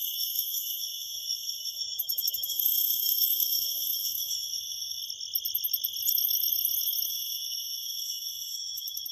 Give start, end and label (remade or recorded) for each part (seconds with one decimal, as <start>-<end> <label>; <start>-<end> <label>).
0.0-5.0 remade; 5.0-7.1 recorded; 7.1-9.1 remade